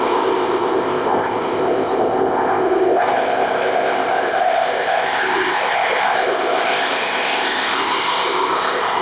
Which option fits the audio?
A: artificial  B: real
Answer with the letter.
A